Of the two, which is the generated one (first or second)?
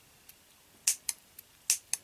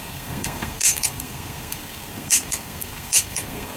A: second